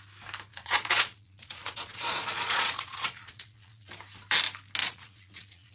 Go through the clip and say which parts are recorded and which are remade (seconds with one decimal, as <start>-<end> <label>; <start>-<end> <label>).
0.0-0.5 recorded; 0.5-3.9 remade; 3.9-4.8 recorded; 4.8-5.7 remade